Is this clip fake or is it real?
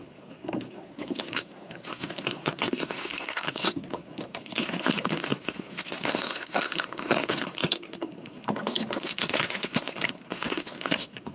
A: fake